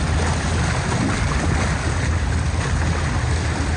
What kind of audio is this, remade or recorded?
recorded